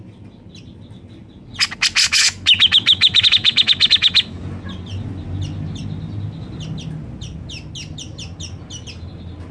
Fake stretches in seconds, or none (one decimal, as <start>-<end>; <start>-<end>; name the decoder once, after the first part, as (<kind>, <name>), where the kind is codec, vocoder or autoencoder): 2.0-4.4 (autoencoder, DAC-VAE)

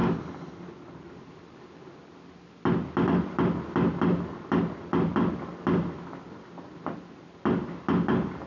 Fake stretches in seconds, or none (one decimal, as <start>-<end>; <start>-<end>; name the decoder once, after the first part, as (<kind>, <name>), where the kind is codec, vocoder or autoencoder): none

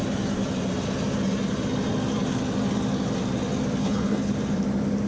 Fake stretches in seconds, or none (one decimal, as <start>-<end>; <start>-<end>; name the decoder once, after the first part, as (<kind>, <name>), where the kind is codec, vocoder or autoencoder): 3.8-4.3 (codec, HILCodec)

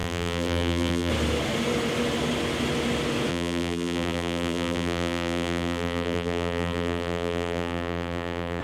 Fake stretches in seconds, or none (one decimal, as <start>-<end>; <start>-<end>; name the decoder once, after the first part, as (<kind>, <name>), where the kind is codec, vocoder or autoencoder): 0.0-1.1 (vocoder, BigVGAN v2); 3.3-8.6